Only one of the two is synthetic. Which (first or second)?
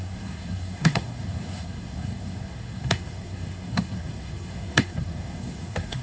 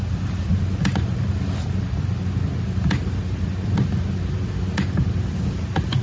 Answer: first